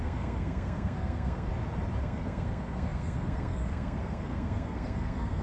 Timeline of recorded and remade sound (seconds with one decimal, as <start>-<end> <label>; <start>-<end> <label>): 0.0-1.5 remade; 1.5-2.0 recorded; 2.0-5.4 remade